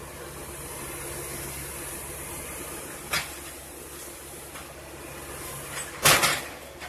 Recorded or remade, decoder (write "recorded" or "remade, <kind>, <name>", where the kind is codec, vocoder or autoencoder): recorded